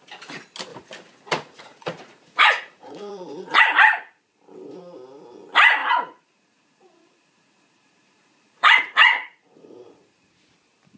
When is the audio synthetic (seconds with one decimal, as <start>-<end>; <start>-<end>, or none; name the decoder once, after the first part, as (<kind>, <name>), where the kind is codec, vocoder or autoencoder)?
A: 0.7-3.6 (vocoder, Vocos); 5.8-10.4